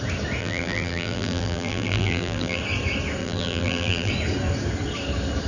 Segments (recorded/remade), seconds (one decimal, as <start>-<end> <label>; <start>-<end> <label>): 0.0-0.4 recorded; 0.4-2.6 remade; 2.6-3.2 recorded; 3.2-4.1 remade; 4.1-5.5 recorded